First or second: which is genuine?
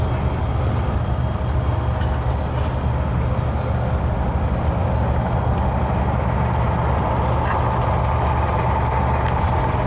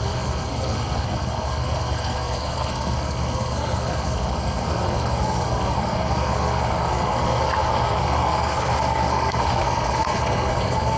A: first